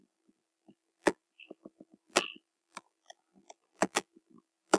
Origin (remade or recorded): remade